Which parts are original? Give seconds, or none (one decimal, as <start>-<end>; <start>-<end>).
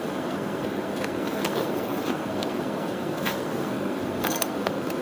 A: none